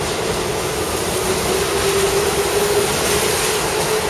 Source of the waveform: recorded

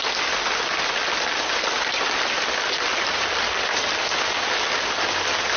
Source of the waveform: recorded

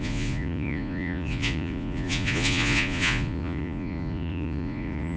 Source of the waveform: remade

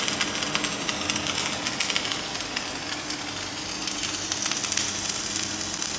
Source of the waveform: recorded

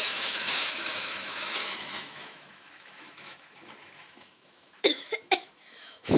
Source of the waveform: remade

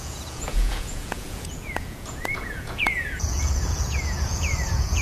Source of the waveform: remade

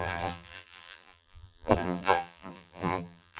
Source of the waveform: remade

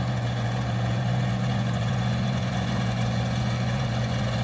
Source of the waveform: remade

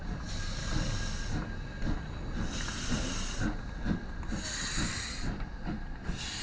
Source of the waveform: recorded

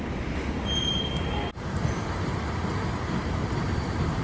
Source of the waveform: recorded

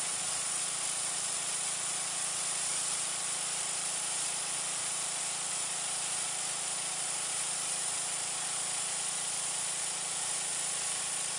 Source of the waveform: recorded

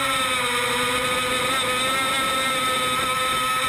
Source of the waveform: recorded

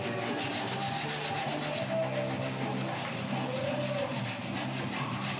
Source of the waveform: recorded